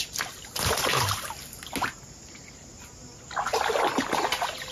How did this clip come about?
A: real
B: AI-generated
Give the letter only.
A